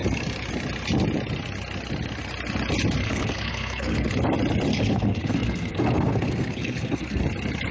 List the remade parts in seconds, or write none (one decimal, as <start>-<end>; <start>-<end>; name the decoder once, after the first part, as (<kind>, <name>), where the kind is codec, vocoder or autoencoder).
3.0-4.1 (codec, SNAC); 4.7-7.2